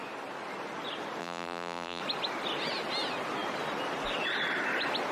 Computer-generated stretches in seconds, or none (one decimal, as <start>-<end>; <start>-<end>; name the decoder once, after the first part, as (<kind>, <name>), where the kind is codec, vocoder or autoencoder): 1.2-2.0 (vocoder, BigVGAN v2)